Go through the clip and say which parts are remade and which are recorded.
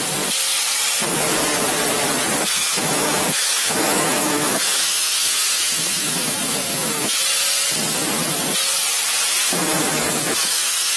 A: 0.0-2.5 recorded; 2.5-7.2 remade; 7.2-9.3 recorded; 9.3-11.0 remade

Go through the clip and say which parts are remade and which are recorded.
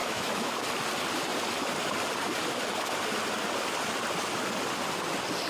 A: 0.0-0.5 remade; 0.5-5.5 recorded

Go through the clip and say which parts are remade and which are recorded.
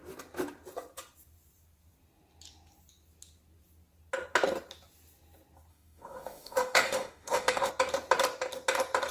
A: 0.0-5.7 recorded; 5.7-7.7 remade; 7.7-9.1 recorded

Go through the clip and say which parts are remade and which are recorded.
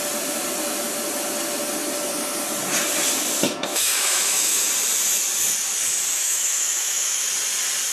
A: 0.0-3.7 recorded; 3.7-4.7 remade; 4.7-6.1 recorded; 6.1-7.3 remade; 7.3-7.9 recorded